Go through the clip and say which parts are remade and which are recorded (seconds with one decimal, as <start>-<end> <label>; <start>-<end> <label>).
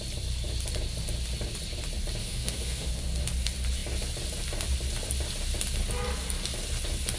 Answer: 0.0-2.2 recorded; 2.2-2.9 remade; 2.9-7.2 recorded